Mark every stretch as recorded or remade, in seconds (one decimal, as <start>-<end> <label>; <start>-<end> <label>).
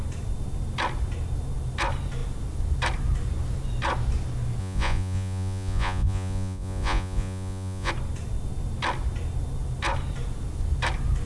0.0-4.6 recorded; 4.6-7.9 remade; 7.9-11.3 recorded